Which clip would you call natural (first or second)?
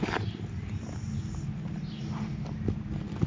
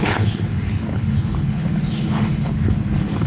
first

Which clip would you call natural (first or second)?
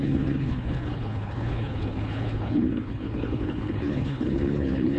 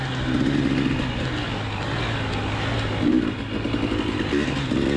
second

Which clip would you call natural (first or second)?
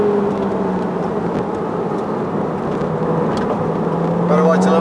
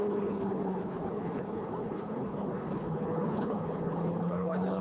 first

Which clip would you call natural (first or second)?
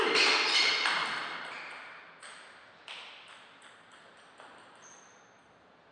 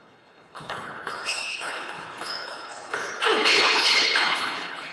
first